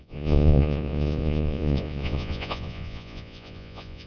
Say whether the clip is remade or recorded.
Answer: remade